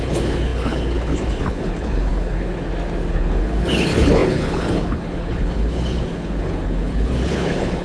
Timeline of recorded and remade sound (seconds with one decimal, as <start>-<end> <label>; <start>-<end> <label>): 0.0-2.5 remade; 2.5-3.1 recorded; 3.1-7.8 remade